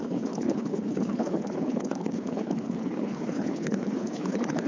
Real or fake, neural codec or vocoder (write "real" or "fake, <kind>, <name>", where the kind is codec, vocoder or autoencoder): fake, codec, HILCodec